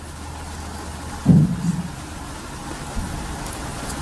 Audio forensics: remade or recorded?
recorded